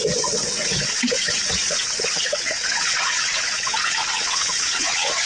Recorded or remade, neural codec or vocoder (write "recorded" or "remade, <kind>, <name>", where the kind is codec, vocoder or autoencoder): remade, vocoder, WaveNeXt